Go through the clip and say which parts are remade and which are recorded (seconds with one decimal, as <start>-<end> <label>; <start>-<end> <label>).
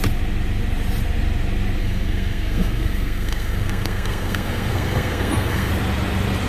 0.0-1.8 recorded; 1.8-5.7 remade; 5.7-6.5 recorded